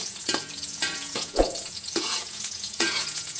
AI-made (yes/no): yes